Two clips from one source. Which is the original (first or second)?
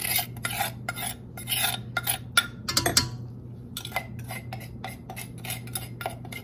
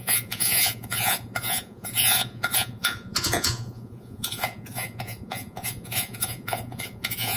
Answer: first